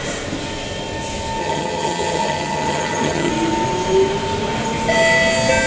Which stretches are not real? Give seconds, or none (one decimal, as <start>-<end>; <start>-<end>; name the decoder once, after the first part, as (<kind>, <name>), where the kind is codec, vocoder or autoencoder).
1.4-3.3 (vocoder, HiFi-GAN)